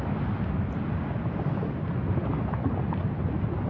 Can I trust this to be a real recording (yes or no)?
yes